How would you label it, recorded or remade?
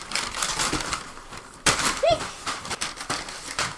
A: remade